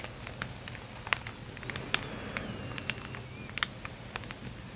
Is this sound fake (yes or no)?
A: no